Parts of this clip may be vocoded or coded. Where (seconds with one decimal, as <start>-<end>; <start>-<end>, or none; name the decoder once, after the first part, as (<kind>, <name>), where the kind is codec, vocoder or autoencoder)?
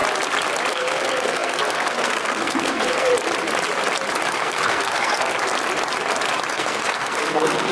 0.7-3.1 (codec, SNAC); 4.3-5.3; 6.5-7.7